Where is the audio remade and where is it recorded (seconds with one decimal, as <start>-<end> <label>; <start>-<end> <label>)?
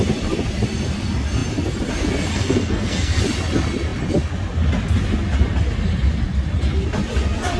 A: 0.0-2.3 recorded; 2.3-3.2 remade; 3.2-7.6 recorded